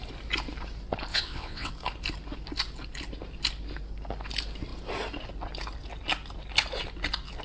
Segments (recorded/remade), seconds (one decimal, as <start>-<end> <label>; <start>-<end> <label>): 0.0-1.1 recorded; 1.1-1.7 remade; 1.7-7.4 recorded